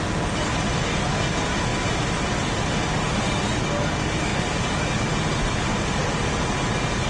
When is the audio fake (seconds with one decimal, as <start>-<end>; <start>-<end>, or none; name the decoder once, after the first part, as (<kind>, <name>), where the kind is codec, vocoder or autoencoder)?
none